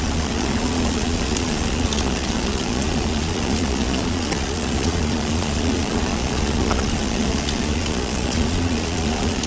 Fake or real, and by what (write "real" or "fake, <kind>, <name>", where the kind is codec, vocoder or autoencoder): fake, vocoder, Vocos